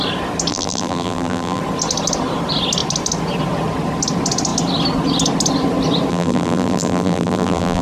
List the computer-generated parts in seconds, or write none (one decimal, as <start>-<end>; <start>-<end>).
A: 0.5-1.6; 6.1-7.8